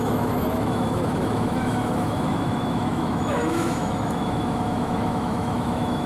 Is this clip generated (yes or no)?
yes